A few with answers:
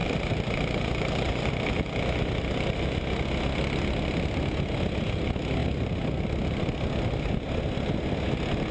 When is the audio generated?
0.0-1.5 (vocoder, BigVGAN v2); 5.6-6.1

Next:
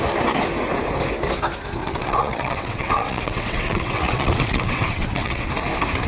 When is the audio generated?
1.8-5.5 (vocoder, WaveNeXt)

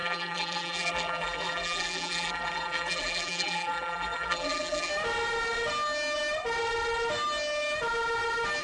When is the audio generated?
0.0-4.9 (vocoder, BigVGAN v2)

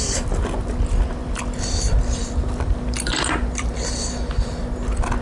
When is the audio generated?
1.2-4.3 (vocoder, BigVGAN v2)

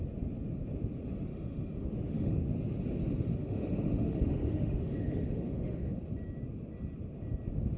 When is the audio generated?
1.3-2.4 (autoencoder, DAC-VAE); 3.3-6.0

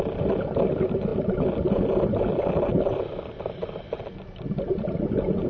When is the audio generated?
none

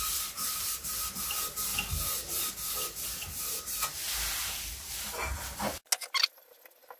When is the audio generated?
none